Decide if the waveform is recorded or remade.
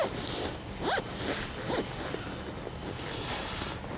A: recorded